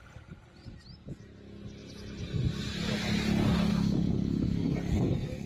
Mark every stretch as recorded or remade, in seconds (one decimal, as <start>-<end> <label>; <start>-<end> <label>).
0.0-3.7 recorded; 3.7-5.5 remade